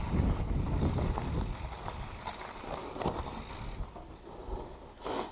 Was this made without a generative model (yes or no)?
yes